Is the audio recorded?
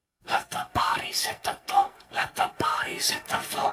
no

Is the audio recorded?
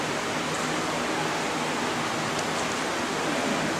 yes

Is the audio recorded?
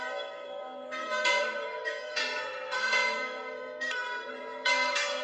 no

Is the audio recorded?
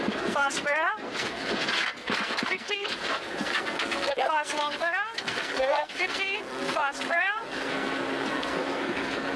no